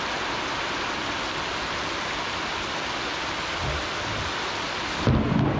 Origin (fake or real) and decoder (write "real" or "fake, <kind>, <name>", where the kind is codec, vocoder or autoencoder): real